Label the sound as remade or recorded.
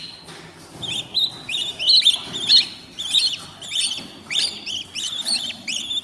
recorded